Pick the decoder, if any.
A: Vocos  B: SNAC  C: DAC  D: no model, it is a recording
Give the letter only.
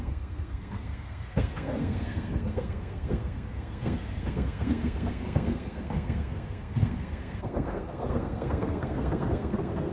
B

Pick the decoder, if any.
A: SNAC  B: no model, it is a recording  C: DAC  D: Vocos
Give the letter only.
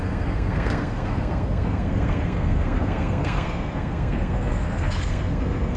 A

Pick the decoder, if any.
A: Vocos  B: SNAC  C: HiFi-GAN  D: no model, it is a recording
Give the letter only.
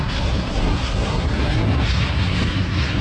B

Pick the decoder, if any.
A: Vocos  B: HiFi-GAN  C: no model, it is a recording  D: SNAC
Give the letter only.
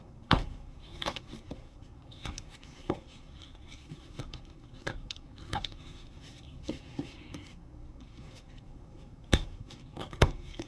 D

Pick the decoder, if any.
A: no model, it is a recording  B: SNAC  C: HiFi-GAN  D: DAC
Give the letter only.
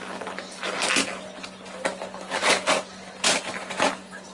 A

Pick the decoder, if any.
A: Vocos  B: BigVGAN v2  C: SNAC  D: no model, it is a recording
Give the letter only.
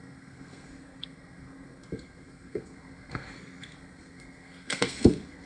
C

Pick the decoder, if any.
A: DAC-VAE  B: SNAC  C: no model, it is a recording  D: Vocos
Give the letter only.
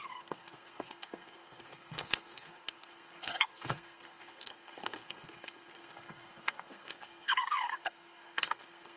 B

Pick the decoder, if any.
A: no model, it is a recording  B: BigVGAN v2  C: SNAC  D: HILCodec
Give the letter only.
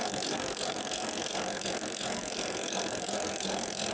C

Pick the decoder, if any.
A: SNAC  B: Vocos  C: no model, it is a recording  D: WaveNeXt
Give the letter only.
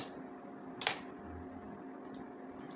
C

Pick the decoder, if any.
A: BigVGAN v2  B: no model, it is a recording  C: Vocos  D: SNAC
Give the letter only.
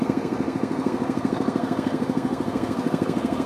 D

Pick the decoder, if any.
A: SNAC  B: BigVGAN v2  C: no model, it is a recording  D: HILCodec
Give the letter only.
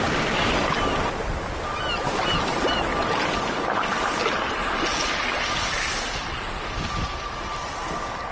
C